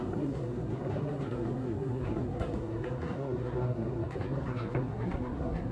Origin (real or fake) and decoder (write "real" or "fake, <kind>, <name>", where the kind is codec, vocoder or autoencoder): fake, codec, SNAC